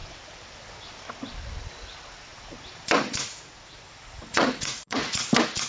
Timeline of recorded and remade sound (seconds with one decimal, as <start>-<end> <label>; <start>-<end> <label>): 0.0-4.3 recorded; 4.3-5.2 remade; 5.2-5.7 recorded